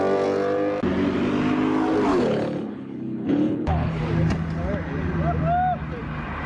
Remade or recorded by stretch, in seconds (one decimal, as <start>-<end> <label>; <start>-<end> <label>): 0.0-2.1 recorded; 2.1-4.0 remade; 4.0-6.5 recorded